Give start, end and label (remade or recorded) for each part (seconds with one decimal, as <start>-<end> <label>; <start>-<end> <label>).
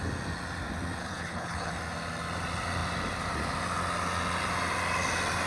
0.0-1.0 recorded; 1.0-1.7 remade; 1.7-5.5 recorded